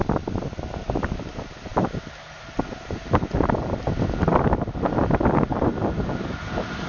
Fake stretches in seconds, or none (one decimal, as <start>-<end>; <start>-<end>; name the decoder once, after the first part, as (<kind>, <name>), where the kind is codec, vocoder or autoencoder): none